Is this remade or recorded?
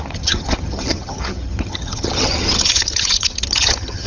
remade